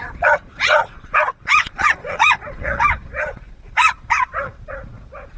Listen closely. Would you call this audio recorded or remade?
remade